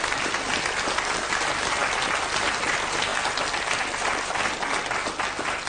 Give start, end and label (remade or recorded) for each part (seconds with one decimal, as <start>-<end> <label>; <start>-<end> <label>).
0.0-5.7 recorded